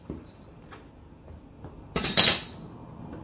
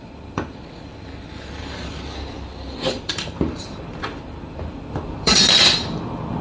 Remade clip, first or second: second